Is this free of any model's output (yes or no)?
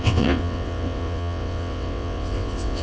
no